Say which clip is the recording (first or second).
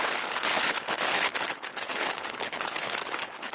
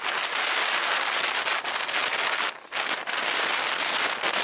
second